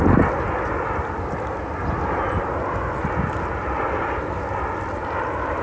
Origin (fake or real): real